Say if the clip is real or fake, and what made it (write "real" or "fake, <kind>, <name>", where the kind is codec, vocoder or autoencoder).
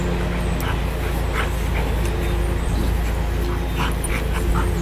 real